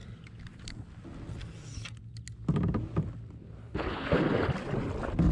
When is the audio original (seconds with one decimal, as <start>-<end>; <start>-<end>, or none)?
0.0-3.6; 4.2-5.3